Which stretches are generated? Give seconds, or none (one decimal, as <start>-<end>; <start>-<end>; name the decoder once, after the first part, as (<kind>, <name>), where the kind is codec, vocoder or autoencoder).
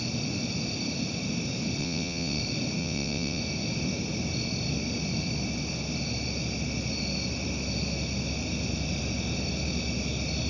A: 1.8-2.4 (vocoder, WaveNeXt); 2.8-3.4